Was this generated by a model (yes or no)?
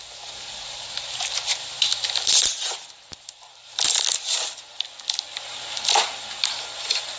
no